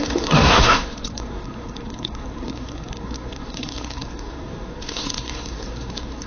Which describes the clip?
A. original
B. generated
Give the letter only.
B